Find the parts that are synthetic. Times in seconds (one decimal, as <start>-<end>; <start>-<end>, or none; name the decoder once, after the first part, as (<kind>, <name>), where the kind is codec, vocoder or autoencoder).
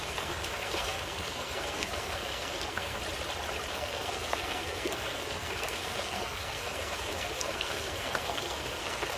0.0-3.0 (codec, SNAC); 3.7-9.2